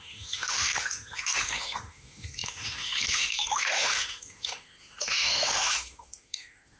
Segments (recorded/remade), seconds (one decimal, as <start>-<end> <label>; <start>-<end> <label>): 0.0-6.8 remade

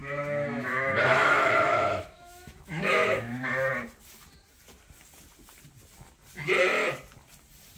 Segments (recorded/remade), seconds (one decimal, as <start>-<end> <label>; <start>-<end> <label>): 0.0-3.7 remade; 3.7-7.8 recorded

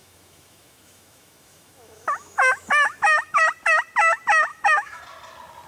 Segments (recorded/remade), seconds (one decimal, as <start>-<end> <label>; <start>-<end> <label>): 0.0-3.4 remade; 3.4-4.5 recorded; 4.5-5.0 remade; 5.0-5.7 recorded

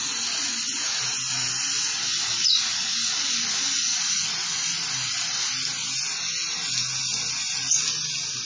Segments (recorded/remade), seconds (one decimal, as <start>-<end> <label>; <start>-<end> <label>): 0.0-8.5 recorded

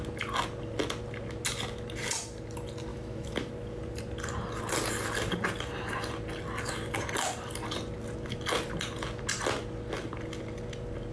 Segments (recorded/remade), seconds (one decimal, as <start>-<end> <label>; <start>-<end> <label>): 0.0-2.9 recorded; 2.9-3.5 remade; 3.5-11.1 recorded

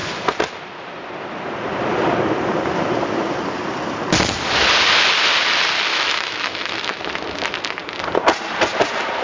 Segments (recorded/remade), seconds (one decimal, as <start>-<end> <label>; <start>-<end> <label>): 0.0-5.9 recorded; 5.9-7.0 remade; 7.0-9.2 recorded

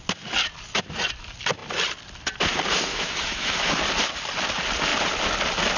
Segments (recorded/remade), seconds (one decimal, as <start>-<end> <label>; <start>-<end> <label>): 0.0-2.9 recorded; 2.9-3.7 remade; 3.7-5.8 recorded

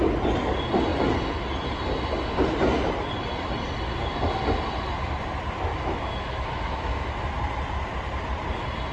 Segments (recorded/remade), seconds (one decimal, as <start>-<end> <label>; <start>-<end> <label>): 0.0-5.7 recorded; 5.7-7.2 remade; 7.2-8.9 recorded